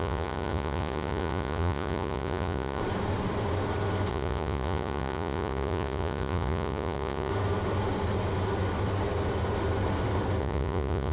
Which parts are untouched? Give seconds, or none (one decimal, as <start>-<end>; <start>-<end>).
2.8-4.1; 7.3-10.4